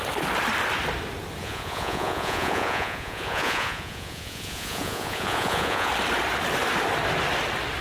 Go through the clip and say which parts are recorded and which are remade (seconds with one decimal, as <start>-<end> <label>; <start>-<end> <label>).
0.0-1.4 recorded; 1.4-5.9 remade; 5.9-7.8 recorded